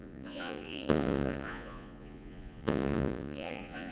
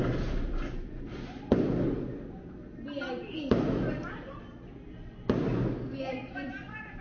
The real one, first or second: second